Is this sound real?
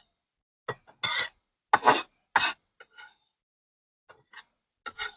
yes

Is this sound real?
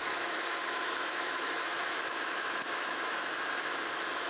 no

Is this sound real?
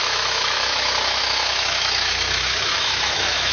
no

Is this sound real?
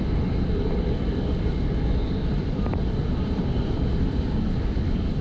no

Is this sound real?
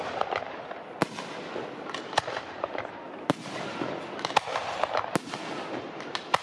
yes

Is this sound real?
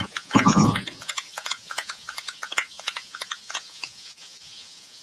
no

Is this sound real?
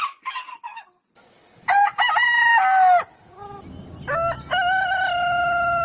yes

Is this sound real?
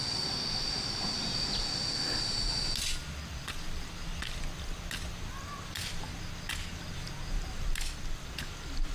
yes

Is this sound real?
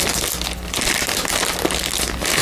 yes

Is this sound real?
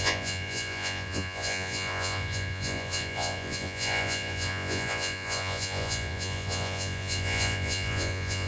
no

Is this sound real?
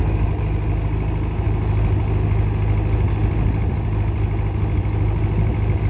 yes